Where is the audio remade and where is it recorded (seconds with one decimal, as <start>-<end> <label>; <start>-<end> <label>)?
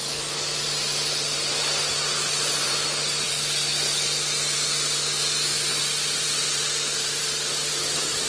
0.0-3.3 remade; 3.3-8.3 recorded